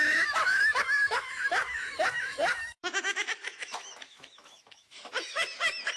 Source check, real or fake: fake